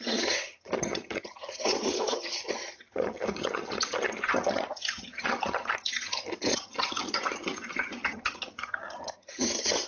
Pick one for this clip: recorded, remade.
remade